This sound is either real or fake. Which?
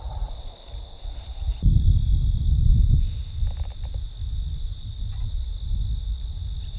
real